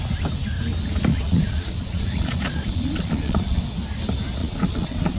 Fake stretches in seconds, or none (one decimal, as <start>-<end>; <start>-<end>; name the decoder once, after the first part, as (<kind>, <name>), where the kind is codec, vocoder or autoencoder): 1.1-3.6 (vocoder, Vocos); 4.4-5.2